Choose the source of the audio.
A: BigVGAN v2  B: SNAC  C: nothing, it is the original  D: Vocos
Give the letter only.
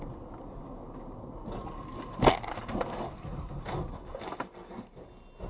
C